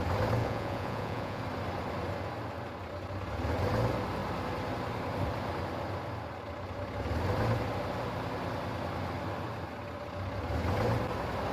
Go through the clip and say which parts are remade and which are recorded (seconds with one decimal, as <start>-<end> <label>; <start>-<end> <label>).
0.0-0.4 recorded; 0.4-1.4 remade; 1.4-11.5 recorded